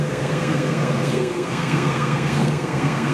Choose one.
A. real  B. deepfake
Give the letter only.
B